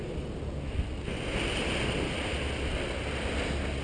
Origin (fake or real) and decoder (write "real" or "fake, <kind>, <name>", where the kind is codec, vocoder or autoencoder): real